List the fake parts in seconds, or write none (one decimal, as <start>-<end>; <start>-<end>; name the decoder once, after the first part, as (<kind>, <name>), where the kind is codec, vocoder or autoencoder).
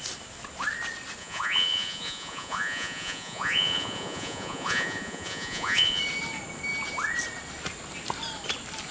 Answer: 1.2-6.0 (vocoder, Vocos)